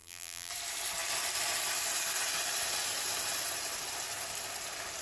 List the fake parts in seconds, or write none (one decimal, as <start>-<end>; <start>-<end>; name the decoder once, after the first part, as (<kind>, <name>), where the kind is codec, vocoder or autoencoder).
0.0-0.5 (vocoder, BigVGAN v2)